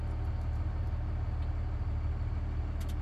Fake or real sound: real